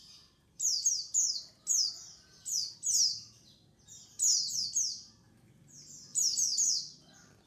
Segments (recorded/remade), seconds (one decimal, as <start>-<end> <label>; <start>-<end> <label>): 0.0-6.1 recorded; 6.1-6.7 remade; 6.7-7.5 recorded